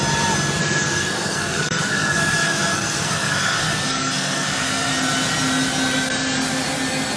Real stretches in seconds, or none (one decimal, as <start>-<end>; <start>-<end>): 0.0-0.6; 4.9-7.2